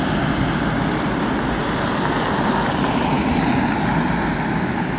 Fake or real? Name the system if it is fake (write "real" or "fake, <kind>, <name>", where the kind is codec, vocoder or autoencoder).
real